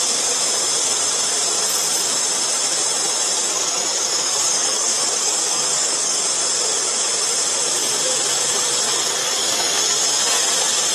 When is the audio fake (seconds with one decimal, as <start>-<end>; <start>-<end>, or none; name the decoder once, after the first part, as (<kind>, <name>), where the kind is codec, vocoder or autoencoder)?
3.9-6.2 (codec, DAC); 9.2-9.8